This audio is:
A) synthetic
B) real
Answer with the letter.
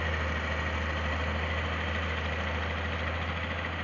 B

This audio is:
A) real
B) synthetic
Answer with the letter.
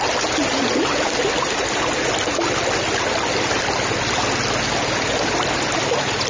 A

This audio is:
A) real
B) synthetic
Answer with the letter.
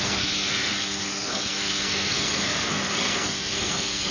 B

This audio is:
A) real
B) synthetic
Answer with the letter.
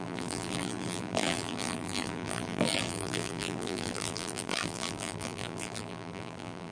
B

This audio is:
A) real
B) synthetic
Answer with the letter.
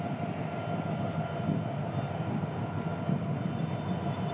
A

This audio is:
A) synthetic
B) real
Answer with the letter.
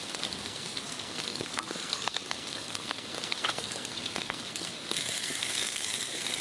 A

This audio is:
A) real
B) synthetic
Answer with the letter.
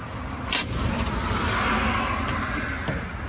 A